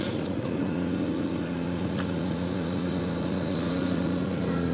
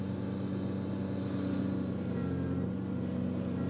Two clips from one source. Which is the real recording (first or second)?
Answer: second